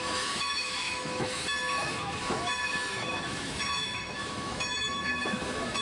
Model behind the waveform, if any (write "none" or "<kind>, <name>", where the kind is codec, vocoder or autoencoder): autoencoder, DAC-VAE